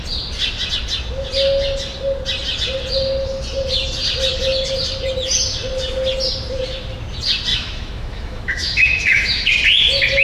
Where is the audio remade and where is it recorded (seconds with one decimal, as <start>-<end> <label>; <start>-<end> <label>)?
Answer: 0.0-7.5 recorded; 7.5-9.5 remade; 9.5-10.2 recorded